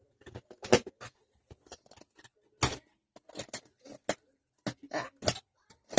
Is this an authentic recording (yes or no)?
yes